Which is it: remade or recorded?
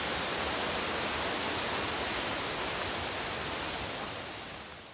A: recorded